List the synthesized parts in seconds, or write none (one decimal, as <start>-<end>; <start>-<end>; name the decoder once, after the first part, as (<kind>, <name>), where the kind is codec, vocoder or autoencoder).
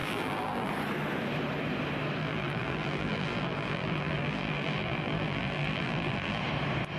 0.0-0.7 (vocoder, BigVGAN v2); 2.2-6.4